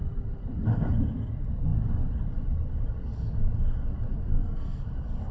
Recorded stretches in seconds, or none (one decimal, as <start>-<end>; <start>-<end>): 0.0-4.2; 4.8-5.3